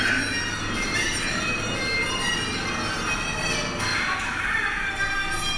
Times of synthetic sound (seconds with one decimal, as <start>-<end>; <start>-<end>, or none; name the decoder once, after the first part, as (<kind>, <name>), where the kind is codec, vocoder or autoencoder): 0.9-1.4 (vocoder, BigVGAN v2); 3.9-4.9

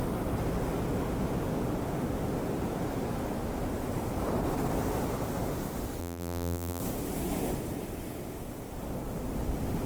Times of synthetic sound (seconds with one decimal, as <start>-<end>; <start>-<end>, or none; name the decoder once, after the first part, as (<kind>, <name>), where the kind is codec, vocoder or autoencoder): 6.0-6.8 (vocoder, BigVGAN v2)

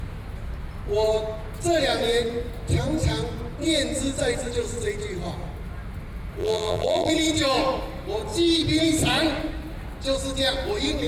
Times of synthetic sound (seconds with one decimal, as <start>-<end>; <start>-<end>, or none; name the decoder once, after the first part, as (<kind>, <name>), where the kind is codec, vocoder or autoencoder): 6.4-7.1 (vocoder, BigVGAN v2)

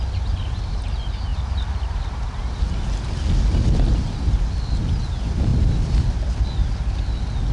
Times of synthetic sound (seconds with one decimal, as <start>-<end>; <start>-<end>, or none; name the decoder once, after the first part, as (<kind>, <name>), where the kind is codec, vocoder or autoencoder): 5.5-6.4 (vocoder, BigVGAN v2)

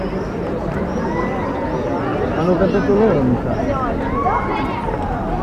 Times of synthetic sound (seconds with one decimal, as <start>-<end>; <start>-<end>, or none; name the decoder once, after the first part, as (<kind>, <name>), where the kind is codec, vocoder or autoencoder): none

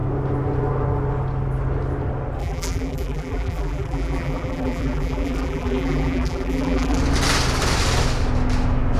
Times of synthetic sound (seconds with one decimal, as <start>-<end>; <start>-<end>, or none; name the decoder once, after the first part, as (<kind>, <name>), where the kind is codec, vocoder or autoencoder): 2.4-7.0 (vocoder, BigVGAN v2)

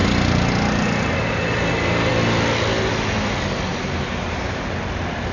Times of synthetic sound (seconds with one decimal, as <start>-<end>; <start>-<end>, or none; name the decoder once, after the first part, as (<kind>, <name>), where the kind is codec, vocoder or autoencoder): 3.7-4.6 (vocoder, BigVGAN v2)